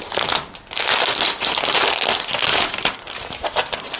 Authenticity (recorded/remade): recorded